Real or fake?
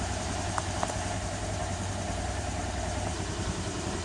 fake